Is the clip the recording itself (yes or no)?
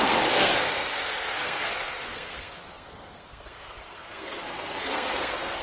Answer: no